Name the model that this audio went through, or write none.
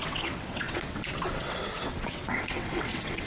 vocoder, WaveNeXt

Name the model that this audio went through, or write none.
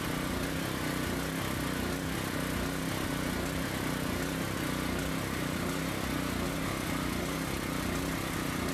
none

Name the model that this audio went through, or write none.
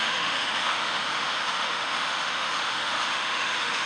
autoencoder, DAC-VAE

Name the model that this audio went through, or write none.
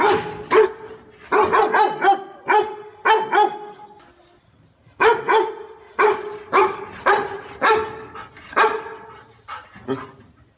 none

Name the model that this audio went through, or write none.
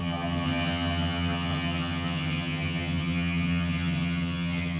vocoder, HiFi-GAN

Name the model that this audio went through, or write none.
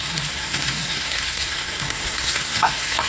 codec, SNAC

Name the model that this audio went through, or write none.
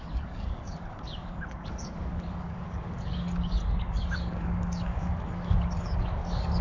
codec, DAC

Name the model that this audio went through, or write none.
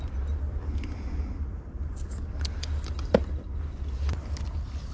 none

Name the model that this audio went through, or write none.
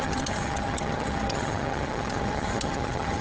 vocoder, HiFi-GAN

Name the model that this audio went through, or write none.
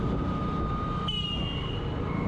none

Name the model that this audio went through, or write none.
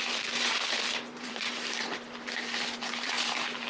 vocoder, BigVGAN v2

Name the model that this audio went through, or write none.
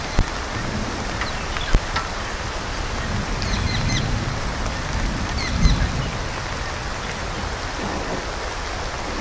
none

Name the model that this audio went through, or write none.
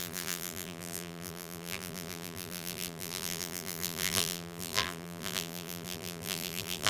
vocoder, BigVGAN v2